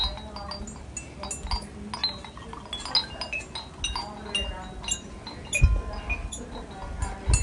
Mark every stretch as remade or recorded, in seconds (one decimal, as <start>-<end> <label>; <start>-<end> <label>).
0.0-7.4 recorded